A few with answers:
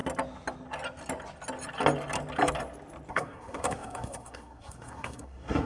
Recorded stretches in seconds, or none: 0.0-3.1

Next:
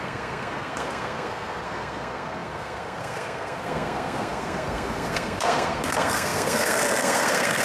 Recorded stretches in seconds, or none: none

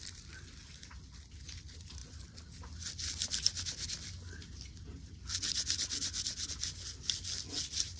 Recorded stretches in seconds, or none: 0.0-8.0

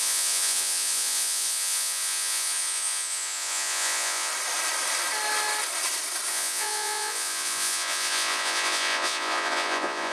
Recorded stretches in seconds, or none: 4.3-6.3

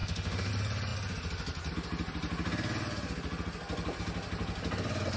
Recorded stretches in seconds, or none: 0.5-5.2

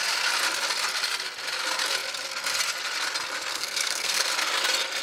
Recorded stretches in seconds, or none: 0.0-3.5; 4.3-5.0